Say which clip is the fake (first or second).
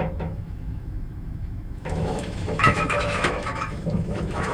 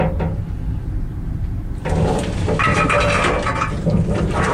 first